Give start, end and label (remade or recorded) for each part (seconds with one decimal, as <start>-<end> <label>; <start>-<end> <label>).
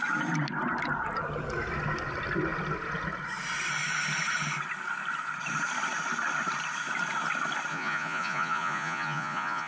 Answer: 0.0-7.7 recorded; 7.7-9.7 remade